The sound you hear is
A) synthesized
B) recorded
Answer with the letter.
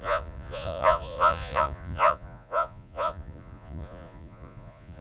A